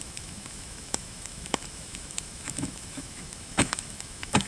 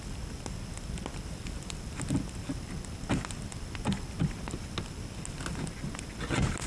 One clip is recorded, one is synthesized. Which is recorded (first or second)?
second